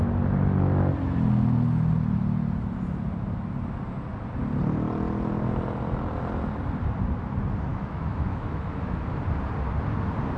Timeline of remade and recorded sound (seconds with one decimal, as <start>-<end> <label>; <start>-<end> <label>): 0.0-7.7 recorded; 7.7-9.1 remade; 9.1-10.4 recorded

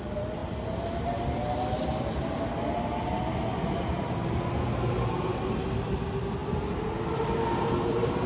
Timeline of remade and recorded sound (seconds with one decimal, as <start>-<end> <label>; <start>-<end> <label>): 0.0-8.3 recorded

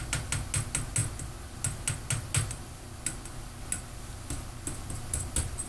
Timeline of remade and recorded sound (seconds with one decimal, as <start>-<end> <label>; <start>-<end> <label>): 0.0-5.7 recorded

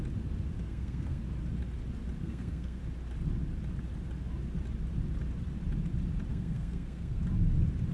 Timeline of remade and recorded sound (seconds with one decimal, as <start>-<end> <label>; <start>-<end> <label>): 0.0-0.6 recorded; 0.6-1.2 remade; 1.2-2.2 recorded; 2.2-2.8 remade; 2.8-6.3 recorded; 6.3-7.2 remade; 7.2-7.9 recorded

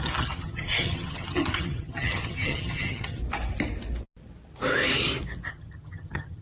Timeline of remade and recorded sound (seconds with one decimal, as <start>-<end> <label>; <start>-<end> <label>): 0.0-3.2 remade; 3.2-5.5 recorded; 5.5-6.4 remade